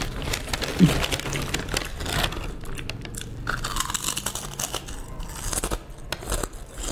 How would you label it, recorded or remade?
recorded